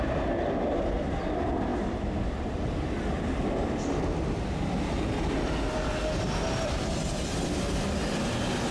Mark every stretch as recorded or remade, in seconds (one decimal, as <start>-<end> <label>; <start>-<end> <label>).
0.0-8.7 recorded